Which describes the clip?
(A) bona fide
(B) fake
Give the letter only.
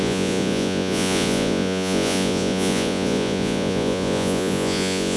B